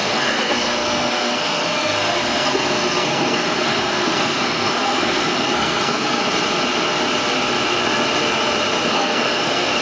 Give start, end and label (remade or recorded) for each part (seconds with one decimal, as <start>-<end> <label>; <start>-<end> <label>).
0.0-6.2 remade; 6.2-8.9 recorded; 8.9-9.8 remade